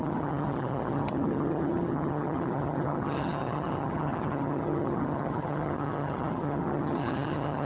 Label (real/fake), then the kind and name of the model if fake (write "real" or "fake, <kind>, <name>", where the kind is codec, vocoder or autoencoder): fake, vocoder, HiFi-GAN